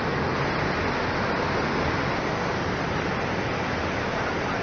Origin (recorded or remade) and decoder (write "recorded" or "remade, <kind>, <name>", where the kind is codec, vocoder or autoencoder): recorded